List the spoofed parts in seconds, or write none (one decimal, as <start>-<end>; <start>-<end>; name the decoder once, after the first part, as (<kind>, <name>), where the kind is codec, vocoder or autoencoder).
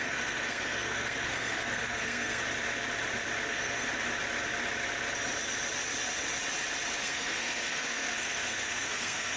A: 0.0-2.4 (codec, SNAC); 3.5-3.9; 7.0-9.4